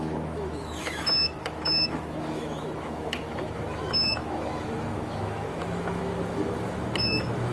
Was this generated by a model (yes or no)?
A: yes